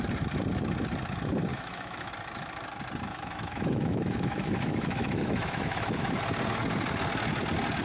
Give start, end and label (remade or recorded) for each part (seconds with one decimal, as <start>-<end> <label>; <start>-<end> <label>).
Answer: 0.0-1.5 recorded; 1.5-2.1 remade; 2.1-3.1 recorded; 3.1-6.2 remade; 6.2-7.8 recorded